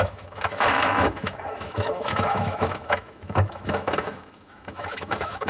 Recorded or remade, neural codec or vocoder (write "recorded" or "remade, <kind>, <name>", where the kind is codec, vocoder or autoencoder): remade, autoencoder, DAC-VAE